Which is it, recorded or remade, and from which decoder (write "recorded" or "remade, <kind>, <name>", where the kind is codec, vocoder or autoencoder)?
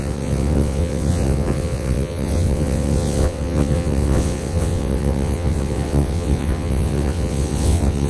remade, vocoder, WaveNeXt